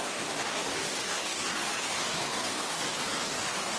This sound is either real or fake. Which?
fake